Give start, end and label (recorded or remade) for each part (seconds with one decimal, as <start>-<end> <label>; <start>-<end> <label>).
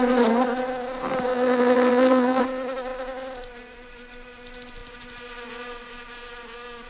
0.0-1.3 recorded; 1.3-2.4 remade; 2.4-6.9 recorded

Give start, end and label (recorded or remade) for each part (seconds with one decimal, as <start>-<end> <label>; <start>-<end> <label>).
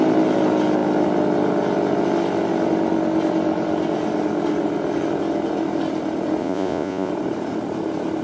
0.0-6.4 recorded; 6.4-7.1 remade; 7.1-8.2 recorded